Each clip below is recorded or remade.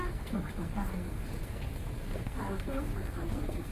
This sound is remade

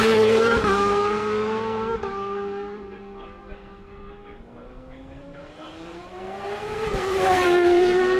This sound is remade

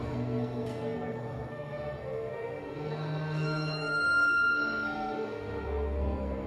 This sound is remade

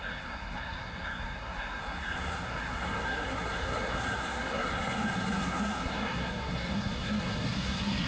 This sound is remade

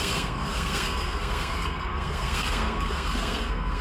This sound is remade